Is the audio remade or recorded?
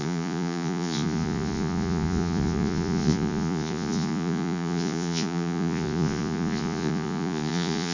remade